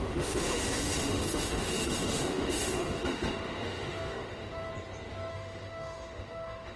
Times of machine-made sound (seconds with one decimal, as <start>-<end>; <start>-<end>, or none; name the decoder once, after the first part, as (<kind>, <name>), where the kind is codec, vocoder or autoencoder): 0.0-4.7 (autoencoder, DAC-VAE); 5.3-6.8

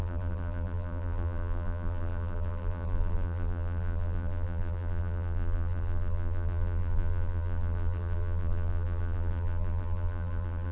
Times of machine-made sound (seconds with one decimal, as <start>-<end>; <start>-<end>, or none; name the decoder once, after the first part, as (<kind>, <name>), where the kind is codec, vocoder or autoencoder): 0.0-10.7 (vocoder, BigVGAN v2)

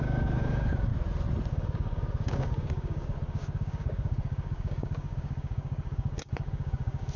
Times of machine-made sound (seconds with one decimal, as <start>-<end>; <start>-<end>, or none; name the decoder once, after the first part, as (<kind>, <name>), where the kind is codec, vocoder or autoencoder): 0.0-0.9 (codec, DAC); 1.5-7.2

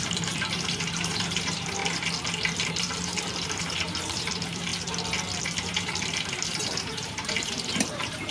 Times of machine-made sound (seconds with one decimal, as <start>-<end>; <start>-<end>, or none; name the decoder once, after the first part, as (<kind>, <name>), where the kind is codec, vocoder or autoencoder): 0.0-1.8 (vocoder, BigVGAN v2); 2.7-4.7; 5.4-8.3